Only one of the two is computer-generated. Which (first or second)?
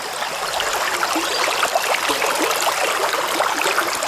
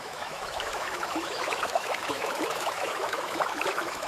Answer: second